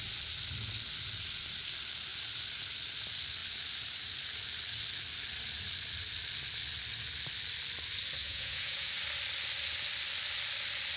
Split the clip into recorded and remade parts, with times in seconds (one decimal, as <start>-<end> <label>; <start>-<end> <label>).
0.0-8.2 recorded; 8.2-8.9 remade; 8.9-11.0 recorded

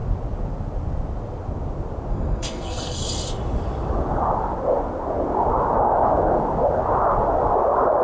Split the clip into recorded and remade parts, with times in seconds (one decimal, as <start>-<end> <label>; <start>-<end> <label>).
0.0-2.1 recorded; 2.1-3.0 remade; 3.0-8.0 recorded

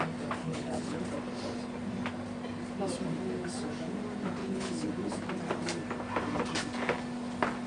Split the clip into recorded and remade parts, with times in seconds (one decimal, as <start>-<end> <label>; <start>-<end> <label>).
0.0-0.4 recorded; 0.4-1.0 remade; 1.0-4.4 recorded; 4.4-4.9 remade; 4.9-7.7 recorded

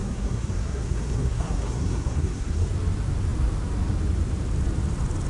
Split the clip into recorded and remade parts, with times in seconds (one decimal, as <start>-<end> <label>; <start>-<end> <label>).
0.0-2.7 remade; 2.7-5.3 recorded

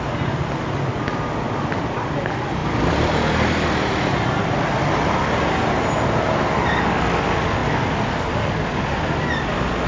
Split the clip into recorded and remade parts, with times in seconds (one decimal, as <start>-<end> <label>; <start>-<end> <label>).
0.0-9.9 recorded

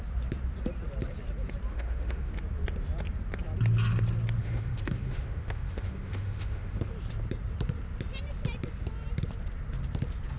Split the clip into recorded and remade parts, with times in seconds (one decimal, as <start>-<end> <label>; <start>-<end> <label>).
0.0-1.7 recorded; 1.7-2.3 remade; 2.3-4.4 recorded; 4.4-6.9 remade; 6.9-10.4 recorded

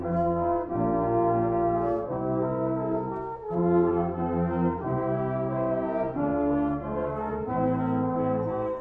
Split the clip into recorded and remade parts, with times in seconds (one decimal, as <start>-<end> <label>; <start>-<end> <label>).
0.0-8.8 recorded

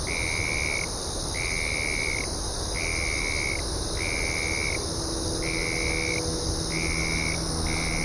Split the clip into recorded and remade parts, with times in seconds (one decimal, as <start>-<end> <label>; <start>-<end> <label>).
0.0-8.0 recorded